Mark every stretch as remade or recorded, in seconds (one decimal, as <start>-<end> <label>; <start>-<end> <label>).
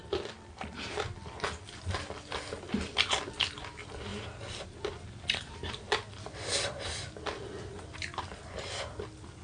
0.0-9.4 recorded